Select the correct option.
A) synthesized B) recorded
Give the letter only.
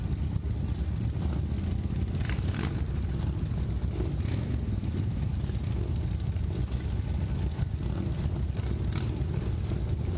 B